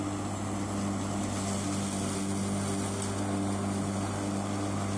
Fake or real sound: real